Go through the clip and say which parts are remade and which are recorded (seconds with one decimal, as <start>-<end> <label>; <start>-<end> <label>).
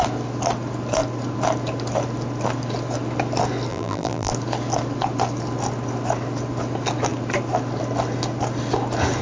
0.0-3.7 recorded; 3.7-4.3 remade; 4.3-9.2 recorded